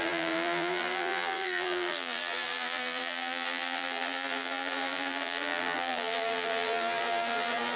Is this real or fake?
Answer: fake